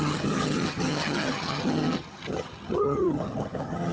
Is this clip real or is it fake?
fake